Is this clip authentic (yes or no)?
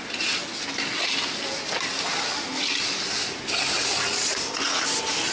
yes